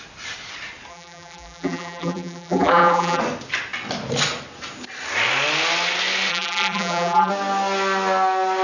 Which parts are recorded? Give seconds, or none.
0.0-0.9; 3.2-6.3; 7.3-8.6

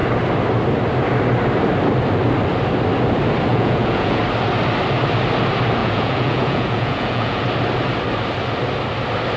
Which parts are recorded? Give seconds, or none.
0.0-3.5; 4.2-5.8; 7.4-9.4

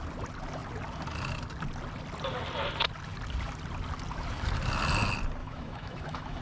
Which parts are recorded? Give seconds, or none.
0.0-5.4